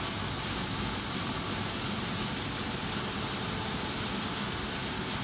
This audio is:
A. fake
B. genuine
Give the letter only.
B